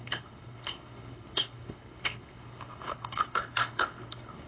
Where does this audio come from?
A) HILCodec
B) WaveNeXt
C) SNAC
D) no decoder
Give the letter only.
A